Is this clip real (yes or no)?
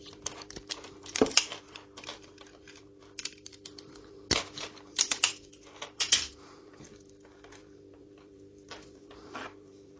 no